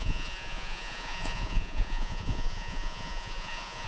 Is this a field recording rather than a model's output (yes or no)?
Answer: no